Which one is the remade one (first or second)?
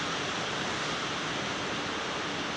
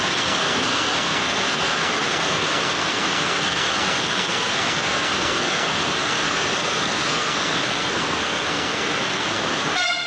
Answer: second